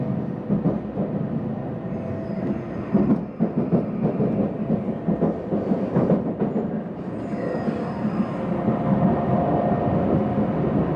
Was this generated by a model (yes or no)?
no